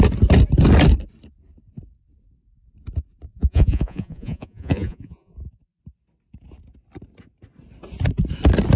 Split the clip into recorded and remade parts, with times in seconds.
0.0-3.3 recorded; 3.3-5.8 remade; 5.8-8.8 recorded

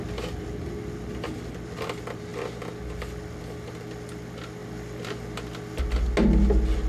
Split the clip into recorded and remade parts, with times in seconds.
0.0-6.9 recorded

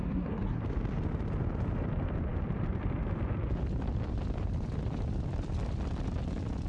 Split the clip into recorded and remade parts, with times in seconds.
0.0-0.6 remade; 0.6-6.7 recorded

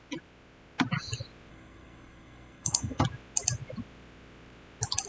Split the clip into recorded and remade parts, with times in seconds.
0.0-1.5 recorded; 1.5-3.0 remade; 3.0-5.1 recorded

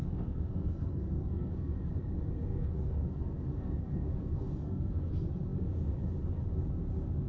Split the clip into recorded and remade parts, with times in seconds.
0.0-1.9 remade; 1.9-2.5 recorded; 2.5-5.1 remade; 5.1-7.3 recorded

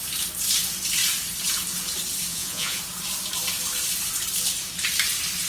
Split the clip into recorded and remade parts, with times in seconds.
0.0-2.3 recorded; 2.3-2.8 remade; 2.8-5.5 recorded

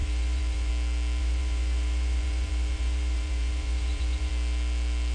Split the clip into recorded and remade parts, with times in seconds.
0.0-0.7 remade; 0.7-1.2 recorded; 1.2-4.3 remade; 4.3-5.1 recorded

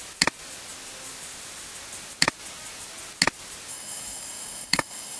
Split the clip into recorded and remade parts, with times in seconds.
0.0-3.7 recorded; 3.7-5.2 remade